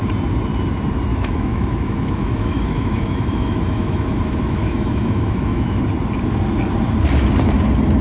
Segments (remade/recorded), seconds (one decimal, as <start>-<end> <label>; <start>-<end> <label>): 0.0-1.1 recorded; 1.1-5.8 remade; 5.8-8.0 recorded